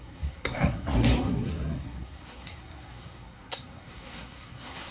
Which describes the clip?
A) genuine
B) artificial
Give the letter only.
B